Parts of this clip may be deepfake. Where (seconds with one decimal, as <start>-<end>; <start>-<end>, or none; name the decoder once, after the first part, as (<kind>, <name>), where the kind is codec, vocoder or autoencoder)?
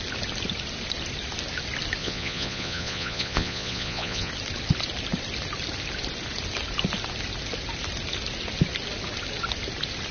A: 2.0-4.3 (vocoder, Vocos)